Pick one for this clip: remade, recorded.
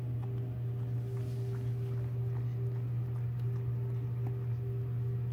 recorded